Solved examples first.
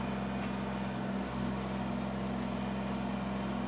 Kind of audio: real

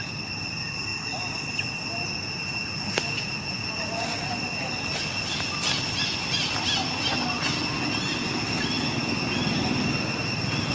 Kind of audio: real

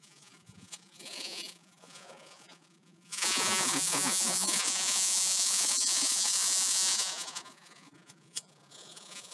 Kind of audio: fake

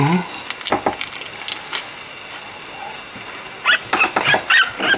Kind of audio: real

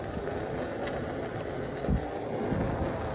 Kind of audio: real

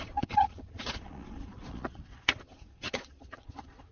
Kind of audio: fake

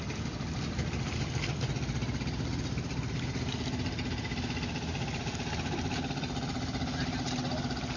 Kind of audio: real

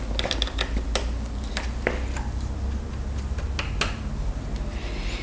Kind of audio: real